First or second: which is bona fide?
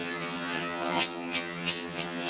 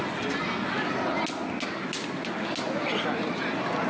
second